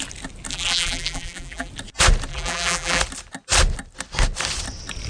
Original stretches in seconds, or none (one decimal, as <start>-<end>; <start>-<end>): 0.0-0.5; 1.7-2.3; 3.0-5.1